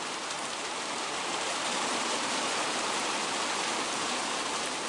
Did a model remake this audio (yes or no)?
yes